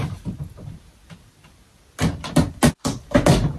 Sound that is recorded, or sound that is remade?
recorded